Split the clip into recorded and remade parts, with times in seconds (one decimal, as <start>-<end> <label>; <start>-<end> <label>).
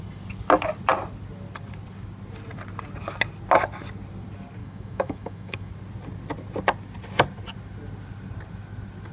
0.0-4.6 recorded; 4.6-5.7 remade; 5.7-9.1 recorded